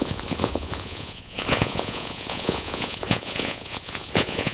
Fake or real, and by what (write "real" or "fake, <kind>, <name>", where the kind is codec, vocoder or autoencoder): fake, vocoder, Vocos